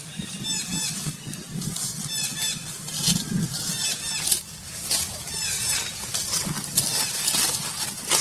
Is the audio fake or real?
real